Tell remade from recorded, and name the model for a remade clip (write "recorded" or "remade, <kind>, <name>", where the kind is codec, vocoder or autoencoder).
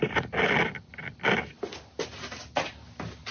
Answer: recorded